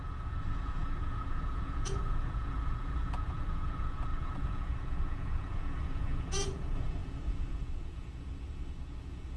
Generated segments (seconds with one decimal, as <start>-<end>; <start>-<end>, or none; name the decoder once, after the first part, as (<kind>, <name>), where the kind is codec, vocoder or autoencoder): 0.0-9.4 (vocoder, Vocos)